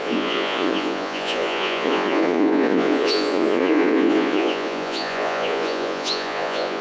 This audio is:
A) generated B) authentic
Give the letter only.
A